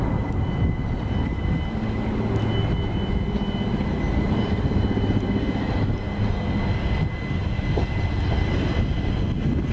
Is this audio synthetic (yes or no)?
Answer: no